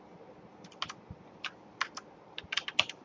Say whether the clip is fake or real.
real